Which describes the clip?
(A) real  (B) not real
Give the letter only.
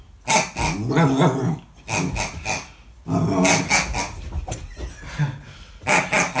A